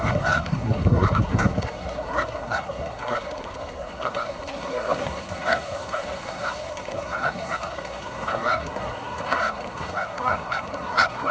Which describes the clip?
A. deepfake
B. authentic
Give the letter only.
A